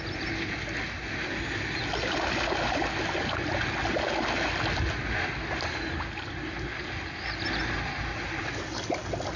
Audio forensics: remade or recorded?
recorded